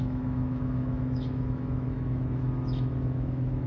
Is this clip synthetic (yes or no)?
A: yes